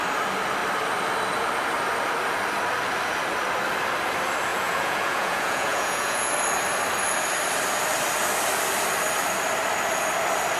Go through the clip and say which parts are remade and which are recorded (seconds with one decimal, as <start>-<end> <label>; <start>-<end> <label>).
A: 0.0-4.5 recorded; 4.5-6.3 remade; 6.3-10.6 recorded